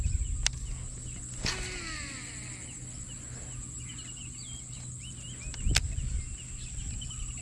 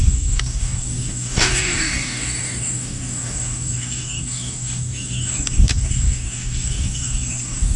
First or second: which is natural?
first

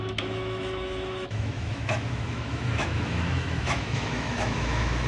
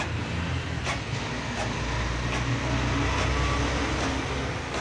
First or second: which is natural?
second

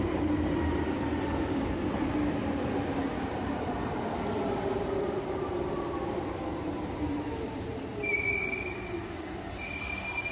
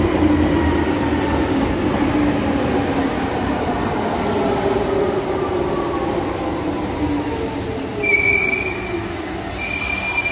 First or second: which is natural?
second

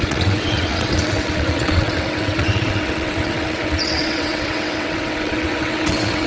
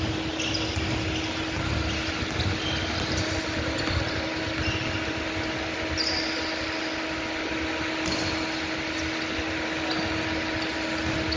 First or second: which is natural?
second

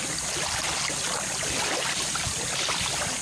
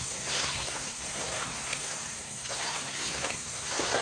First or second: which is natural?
first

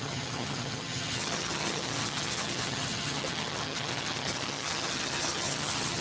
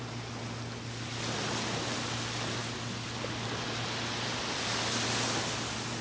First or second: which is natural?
second